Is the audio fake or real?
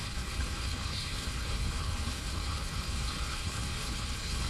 fake